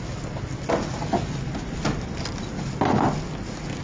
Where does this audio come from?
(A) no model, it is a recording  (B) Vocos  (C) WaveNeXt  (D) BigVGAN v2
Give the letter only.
A